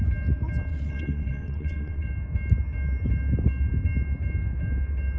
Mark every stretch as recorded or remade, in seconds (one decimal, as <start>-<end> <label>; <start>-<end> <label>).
0.0-0.7 recorded; 0.7-2.1 remade; 2.1-5.2 recorded